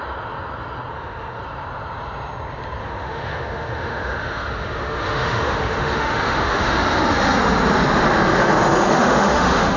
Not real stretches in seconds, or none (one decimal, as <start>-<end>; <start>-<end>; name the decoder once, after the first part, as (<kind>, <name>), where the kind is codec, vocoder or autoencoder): 0.9-1.4 (autoencoder, DAC-VAE); 2.8-6.8; 8.9-9.8